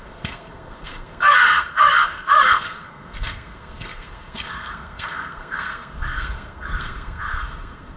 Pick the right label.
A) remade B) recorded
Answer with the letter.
A